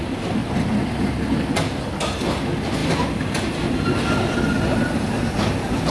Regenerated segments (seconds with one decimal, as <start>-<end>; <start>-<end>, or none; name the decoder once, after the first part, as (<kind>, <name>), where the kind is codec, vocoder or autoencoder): none